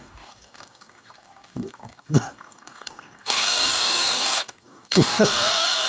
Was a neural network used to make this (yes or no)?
yes